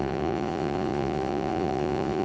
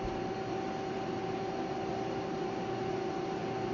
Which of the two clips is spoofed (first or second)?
first